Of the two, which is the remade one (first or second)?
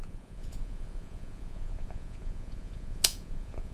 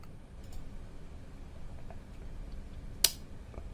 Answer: first